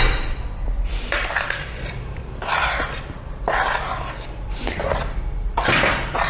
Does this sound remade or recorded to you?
remade